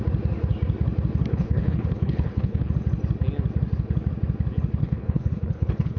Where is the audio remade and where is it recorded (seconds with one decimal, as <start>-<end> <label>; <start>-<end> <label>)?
0.0-1.3 recorded; 1.3-2.7 remade; 2.7-4.8 recorded; 4.8-6.0 remade